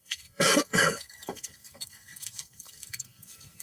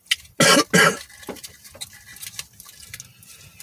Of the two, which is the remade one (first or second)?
first